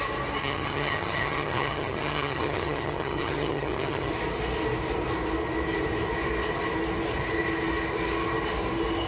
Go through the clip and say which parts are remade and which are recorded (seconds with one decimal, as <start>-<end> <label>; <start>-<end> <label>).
0.0-0.4 recorded; 0.4-4.1 remade; 4.1-9.1 recorded